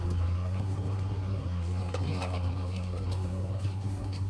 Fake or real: fake